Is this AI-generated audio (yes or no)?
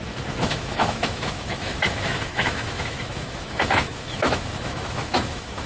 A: yes